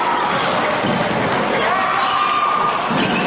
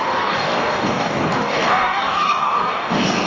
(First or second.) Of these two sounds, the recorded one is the first